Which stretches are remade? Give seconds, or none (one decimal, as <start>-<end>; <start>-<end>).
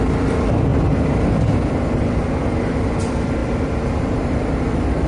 0.0-0.7; 3.0-5.1